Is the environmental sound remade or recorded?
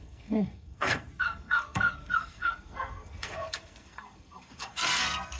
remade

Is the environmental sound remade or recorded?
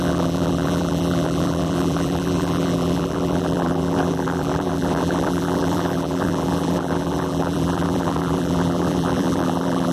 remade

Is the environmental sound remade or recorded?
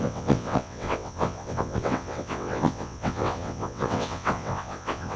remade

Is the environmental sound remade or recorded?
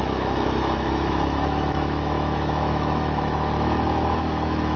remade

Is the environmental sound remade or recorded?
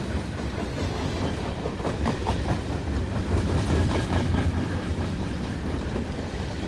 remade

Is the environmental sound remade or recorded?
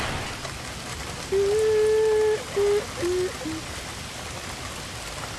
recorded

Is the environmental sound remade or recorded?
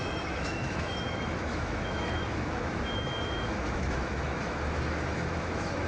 remade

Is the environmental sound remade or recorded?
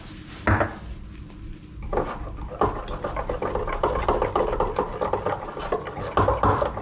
recorded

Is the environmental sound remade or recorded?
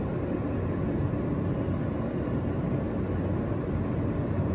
recorded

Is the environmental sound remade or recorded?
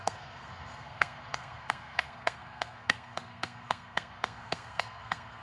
remade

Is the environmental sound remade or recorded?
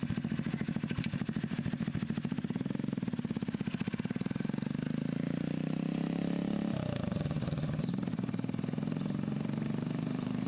remade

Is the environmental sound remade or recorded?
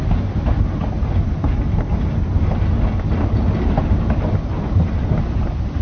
recorded